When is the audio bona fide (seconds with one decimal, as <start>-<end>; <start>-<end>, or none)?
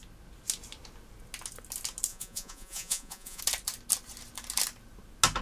0.0-2.1; 3.4-5.4